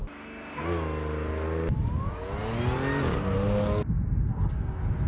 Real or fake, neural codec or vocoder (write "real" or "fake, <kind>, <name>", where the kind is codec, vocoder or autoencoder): real